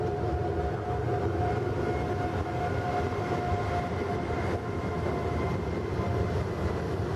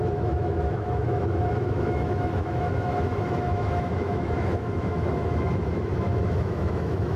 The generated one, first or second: second